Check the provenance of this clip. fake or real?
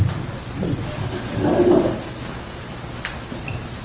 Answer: real